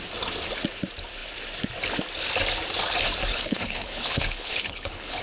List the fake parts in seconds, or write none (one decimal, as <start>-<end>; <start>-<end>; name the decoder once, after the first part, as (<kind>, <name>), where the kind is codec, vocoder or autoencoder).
3.3-5.2 (codec, HILCodec)